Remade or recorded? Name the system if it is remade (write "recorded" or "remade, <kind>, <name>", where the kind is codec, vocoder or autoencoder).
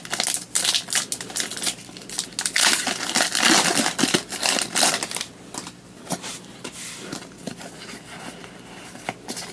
recorded